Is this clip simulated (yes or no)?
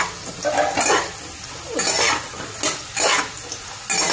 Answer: no